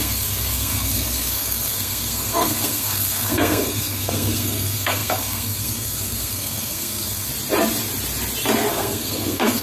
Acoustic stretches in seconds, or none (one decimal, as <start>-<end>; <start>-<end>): 7.3-8.7